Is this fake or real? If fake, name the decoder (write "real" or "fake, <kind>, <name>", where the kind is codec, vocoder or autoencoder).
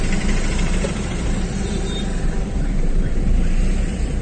fake, vocoder, BigVGAN v2